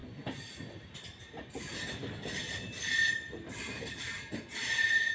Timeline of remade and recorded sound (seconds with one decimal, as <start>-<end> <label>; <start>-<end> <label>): 0.0-5.1 recorded